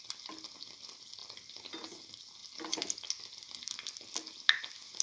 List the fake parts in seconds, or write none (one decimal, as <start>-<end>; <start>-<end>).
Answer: none